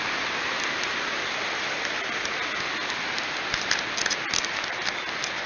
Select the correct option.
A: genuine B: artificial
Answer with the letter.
A